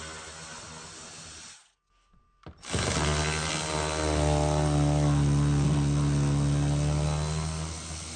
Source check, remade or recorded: recorded